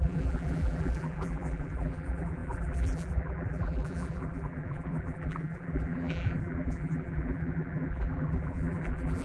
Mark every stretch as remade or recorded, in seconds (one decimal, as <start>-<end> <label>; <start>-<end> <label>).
0.0-9.2 remade